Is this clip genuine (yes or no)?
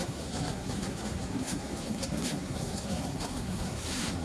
no